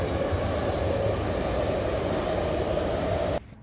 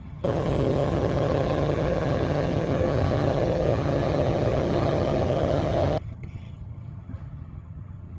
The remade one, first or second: second